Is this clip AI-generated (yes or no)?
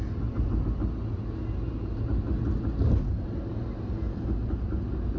no